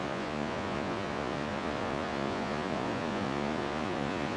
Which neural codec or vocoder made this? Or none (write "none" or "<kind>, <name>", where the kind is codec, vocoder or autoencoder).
vocoder, Vocos